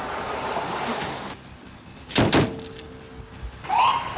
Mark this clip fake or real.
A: real